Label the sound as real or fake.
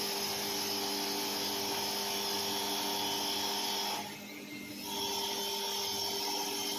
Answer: real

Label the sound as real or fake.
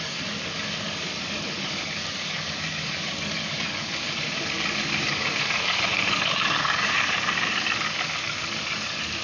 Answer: fake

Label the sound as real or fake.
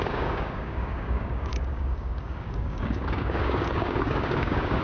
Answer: fake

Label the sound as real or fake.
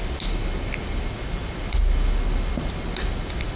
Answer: real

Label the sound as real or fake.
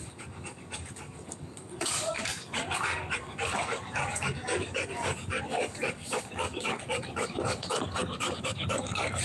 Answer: fake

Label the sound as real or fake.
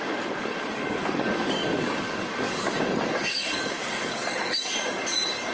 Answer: fake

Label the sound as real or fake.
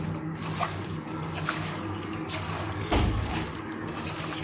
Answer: fake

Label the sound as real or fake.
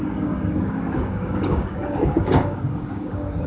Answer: fake